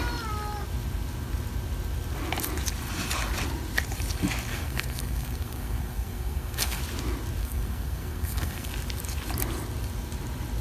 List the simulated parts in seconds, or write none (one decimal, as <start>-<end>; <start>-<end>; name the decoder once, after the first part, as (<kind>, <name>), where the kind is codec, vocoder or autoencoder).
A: 4.5-6.8 (codec, SNAC); 7.4-8.7